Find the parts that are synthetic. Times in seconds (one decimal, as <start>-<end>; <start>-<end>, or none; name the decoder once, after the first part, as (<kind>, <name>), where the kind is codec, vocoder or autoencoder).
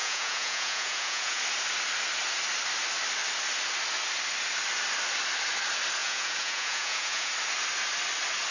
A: 0.0-1.4 (vocoder, Vocos); 6.0-7.3